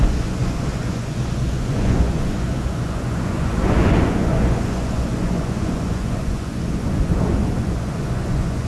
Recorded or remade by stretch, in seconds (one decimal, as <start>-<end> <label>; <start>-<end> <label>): 0.0-8.7 remade